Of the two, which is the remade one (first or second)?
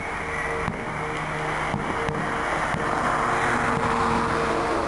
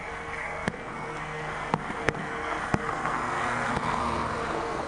second